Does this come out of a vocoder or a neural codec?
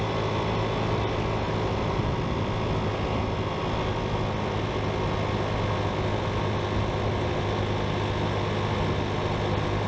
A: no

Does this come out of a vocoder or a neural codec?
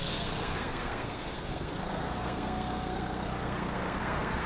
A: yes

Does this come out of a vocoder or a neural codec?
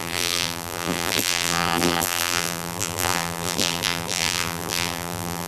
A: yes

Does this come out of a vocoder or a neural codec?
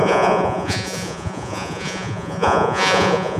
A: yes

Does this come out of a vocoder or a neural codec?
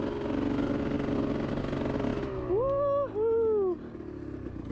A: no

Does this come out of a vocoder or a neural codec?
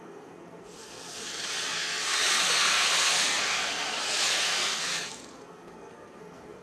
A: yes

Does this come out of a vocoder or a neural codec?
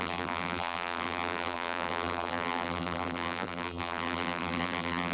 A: yes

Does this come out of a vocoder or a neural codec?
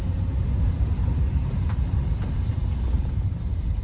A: no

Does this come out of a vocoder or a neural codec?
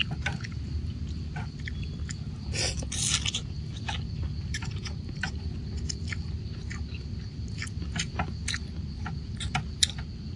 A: no